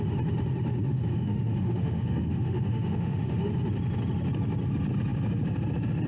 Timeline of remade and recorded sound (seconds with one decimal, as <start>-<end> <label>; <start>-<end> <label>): 0.0-1.1 recorded; 1.1-3.4 remade; 3.4-6.1 recorded